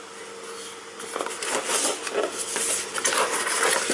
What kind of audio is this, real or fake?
real